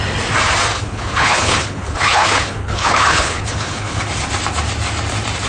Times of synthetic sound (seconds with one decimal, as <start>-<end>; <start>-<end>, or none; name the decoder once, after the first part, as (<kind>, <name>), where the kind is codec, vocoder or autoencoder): 0.7-4.0 (codec, HILCodec)